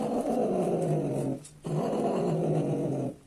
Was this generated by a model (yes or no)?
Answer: no